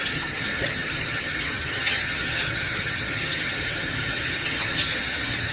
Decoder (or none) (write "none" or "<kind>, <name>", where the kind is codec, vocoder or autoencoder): vocoder, HiFi-GAN